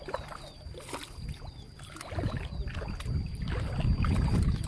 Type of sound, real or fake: real